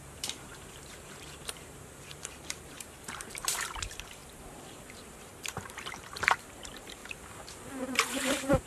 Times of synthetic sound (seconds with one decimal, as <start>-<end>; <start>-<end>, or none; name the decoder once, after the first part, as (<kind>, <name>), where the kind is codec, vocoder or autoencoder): 0.0-7.0 (vocoder, BigVGAN v2); 7.8-8.7